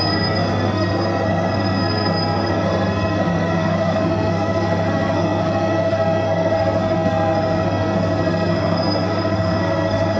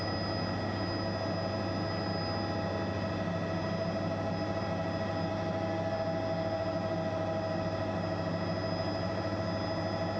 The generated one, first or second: first